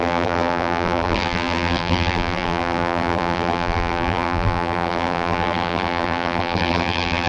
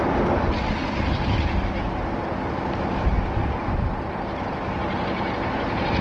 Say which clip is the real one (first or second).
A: second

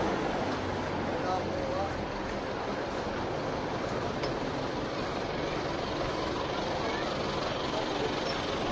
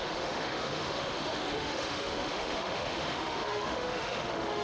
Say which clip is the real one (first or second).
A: first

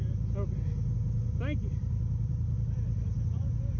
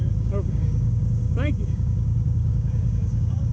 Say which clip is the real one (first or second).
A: first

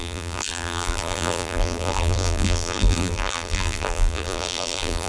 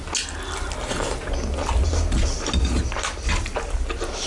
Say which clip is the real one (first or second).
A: second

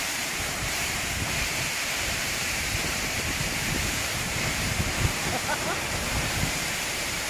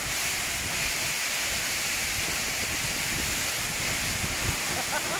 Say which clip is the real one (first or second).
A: second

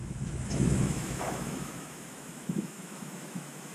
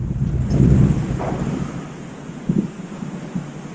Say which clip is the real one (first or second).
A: second